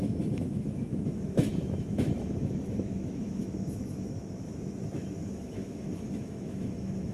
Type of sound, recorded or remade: remade